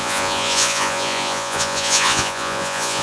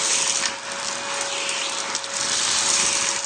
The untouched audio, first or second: second